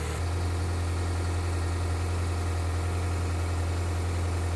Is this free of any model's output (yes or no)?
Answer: yes